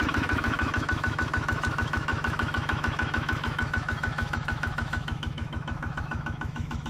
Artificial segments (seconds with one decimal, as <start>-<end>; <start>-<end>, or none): 0.0-6.9